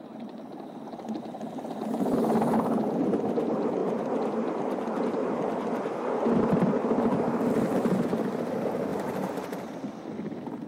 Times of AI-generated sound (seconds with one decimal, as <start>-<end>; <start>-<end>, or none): 8.9-9.7